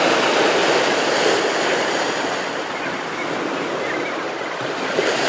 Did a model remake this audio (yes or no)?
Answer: no